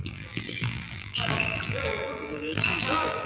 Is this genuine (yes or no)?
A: no